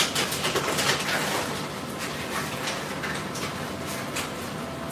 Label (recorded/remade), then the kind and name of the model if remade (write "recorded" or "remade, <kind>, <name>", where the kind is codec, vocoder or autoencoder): recorded